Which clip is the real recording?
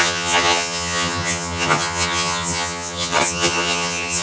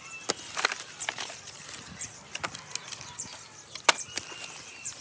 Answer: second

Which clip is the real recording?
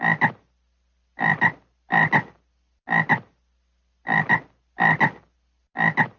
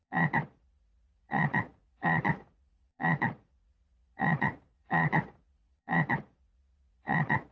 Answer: first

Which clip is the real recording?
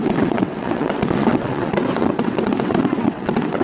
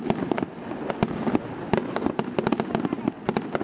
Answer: second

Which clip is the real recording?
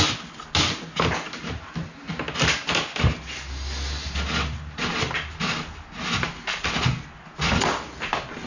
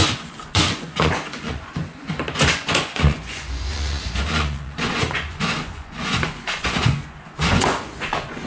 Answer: first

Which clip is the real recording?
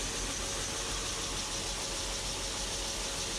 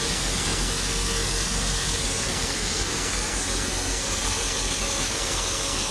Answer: first